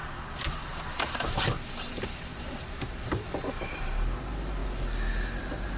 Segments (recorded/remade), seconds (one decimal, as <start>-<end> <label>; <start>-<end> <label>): 0.0-3.5 remade; 3.5-5.8 recorded